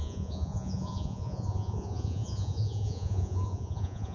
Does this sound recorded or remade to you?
remade